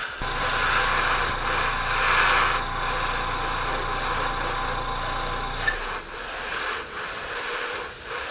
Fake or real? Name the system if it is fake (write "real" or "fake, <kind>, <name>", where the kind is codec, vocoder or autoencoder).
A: real